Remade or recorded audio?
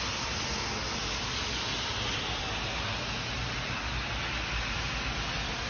recorded